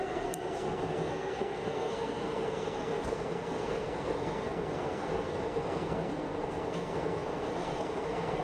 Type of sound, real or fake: fake